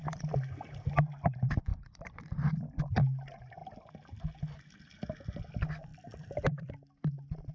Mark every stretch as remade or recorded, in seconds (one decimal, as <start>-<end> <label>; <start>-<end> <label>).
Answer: 0.0-1.7 recorded; 1.7-2.2 remade; 2.2-5.9 recorded; 5.9-6.7 remade; 6.7-7.5 recorded